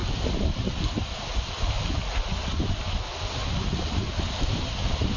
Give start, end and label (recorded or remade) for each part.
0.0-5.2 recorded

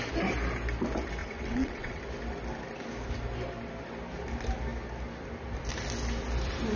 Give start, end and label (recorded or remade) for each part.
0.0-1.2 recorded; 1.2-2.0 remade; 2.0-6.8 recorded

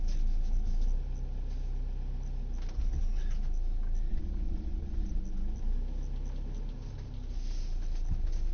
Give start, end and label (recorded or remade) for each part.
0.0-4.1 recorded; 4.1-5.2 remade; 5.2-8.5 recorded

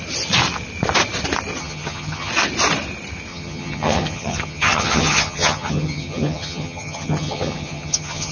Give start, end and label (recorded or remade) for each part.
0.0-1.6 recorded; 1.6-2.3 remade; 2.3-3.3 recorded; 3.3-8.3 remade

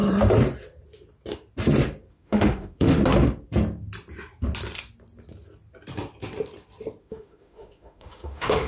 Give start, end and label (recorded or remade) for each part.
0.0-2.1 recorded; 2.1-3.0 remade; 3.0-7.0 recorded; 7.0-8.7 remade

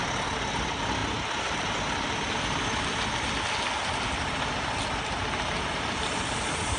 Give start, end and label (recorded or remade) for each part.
0.0-6.8 recorded